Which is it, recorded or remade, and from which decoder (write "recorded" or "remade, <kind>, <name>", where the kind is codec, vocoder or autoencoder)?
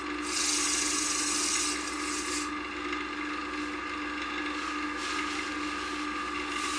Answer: recorded